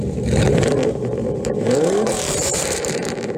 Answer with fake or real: fake